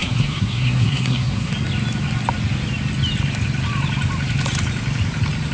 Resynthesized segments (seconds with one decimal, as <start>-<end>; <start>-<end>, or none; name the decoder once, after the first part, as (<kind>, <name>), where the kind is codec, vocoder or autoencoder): 0.0-1.5 (codec, SNAC)